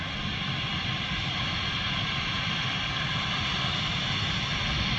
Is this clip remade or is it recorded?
recorded